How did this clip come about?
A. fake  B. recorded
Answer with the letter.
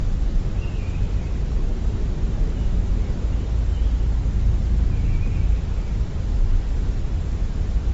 B